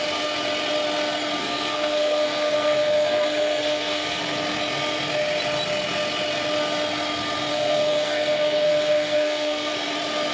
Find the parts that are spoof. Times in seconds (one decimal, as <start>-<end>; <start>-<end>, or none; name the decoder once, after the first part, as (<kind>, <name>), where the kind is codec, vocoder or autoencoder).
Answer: 1.4-4.2 (codec, SNAC); 7.5-9.7